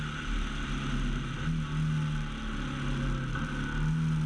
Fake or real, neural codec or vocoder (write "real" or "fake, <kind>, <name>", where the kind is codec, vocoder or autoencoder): real